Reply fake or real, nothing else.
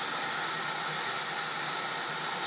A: real